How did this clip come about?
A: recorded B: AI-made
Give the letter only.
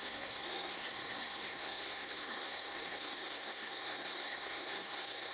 B